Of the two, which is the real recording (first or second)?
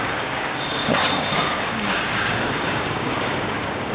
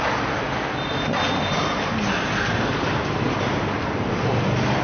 second